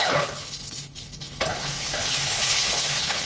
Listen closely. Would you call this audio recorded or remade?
remade